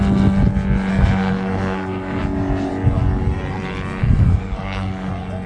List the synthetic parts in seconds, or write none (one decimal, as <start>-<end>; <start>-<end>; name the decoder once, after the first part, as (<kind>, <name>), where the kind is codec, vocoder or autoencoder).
0.9-2.2 (codec, SNAC); 4.0-5.1